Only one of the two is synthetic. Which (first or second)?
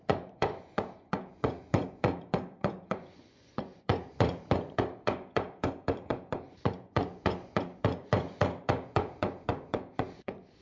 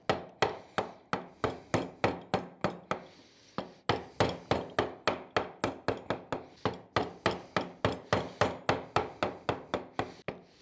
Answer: first